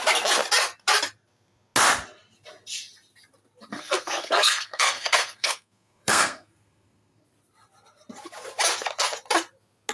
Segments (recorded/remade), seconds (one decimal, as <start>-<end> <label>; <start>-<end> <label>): 0.0-3.7 recorded; 3.7-7.2 remade; 7.2-9.9 recorded